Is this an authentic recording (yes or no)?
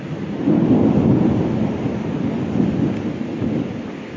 yes